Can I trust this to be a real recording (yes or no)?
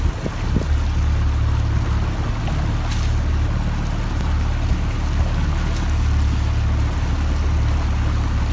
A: yes